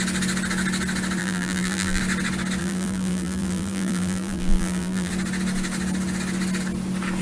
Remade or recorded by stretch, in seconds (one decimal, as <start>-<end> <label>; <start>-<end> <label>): 0.0-1.2 recorded; 1.2-2.0 remade; 2.0-2.6 recorded; 2.6-5.1 remade; 5.1-7.2 recorded